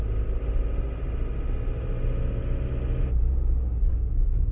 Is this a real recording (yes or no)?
yes